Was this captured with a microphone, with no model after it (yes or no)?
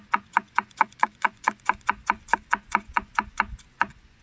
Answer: no